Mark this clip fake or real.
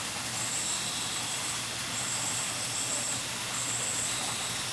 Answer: real